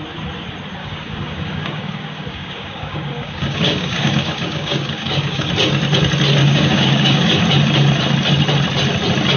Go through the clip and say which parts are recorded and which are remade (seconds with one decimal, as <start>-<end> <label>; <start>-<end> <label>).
0.0-0.8 recorded; 0.8-5.5 remade; 5.5-6.4 recorded; 6.4-7.4 remade; 7.4-9.4 recorded